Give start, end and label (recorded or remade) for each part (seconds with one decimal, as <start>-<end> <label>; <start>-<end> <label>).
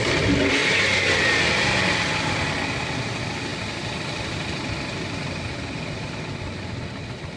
0.0-0.6 recorded; 0.6-1.2 remade; 1.2-7.4 recorded